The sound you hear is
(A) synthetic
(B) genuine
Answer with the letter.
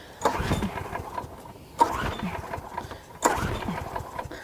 B